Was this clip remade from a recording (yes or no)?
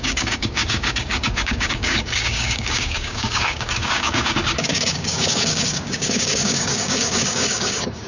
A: yes